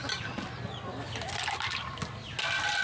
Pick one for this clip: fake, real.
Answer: real